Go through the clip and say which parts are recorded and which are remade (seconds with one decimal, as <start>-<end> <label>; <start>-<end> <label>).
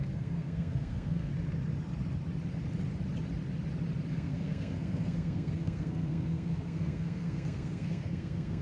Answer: 0.0-1.3 remade; 1.3-4.1 recorded; 4.1-8.6 remade